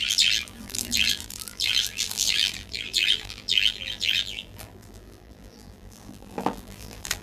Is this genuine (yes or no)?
no